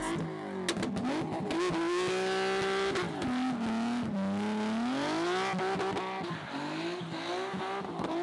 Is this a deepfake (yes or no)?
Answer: no